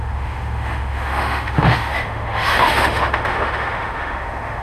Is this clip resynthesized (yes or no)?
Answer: yes